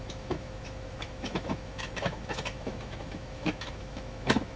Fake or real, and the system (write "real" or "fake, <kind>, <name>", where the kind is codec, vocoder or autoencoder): fake, autoencoder, DAC-VAE